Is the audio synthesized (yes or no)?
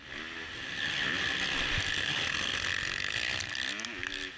no